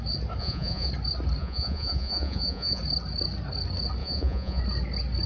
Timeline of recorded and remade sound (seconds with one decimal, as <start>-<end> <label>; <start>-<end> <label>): 0.0-0.4 recorded; 0.4-0.9 remade; 0.9-1.4 recorded; 1.4-2.8 remade; 2.8-4.0 recorded; 4.0-4.6 remade; 4.6-5.3 recorded